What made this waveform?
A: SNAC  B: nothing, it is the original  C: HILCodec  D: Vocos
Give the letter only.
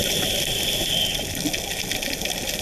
B